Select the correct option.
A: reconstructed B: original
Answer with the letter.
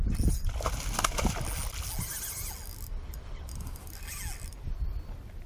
B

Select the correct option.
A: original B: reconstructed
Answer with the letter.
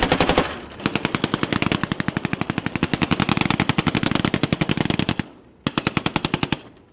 A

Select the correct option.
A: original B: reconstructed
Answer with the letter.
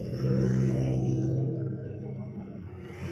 B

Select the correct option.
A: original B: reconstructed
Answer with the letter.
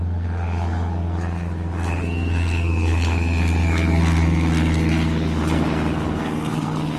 B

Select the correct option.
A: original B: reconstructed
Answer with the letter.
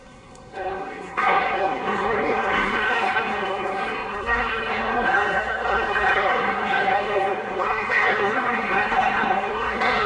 B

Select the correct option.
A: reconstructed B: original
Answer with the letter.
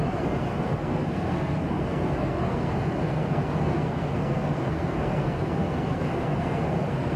A